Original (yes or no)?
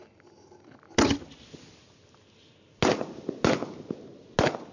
yes